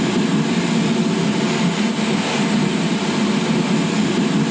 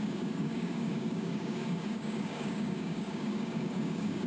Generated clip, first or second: second